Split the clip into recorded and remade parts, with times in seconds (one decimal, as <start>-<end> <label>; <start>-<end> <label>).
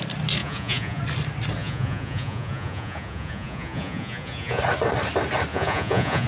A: 0.0-0.4 recorded; 0.4-1.0 remade; 1.0-1.6 recorded; 1.6-4.6 remade; 4.6-5.5 recorded; 5.5-6.3 remade